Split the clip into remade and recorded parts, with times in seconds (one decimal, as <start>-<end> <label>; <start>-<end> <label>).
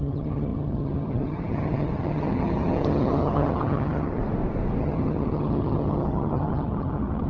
0.0-4.2 remade; 4.2-4.8 recorded; 4.8-7.3 remade